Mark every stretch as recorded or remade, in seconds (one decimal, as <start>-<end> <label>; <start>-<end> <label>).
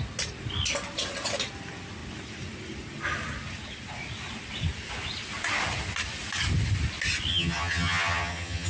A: 0.0-7.3 recorded; 7.3-8.7 remade